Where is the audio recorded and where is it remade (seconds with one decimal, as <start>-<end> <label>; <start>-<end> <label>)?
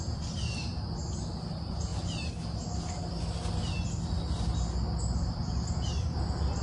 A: 0.0-6.6 recorded